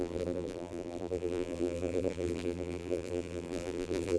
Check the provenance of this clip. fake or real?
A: fake